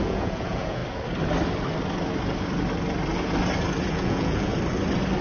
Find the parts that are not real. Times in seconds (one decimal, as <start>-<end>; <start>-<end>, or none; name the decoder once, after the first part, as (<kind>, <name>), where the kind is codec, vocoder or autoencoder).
0.0-0.8 (vocoder, Vocos); 3.9-4.5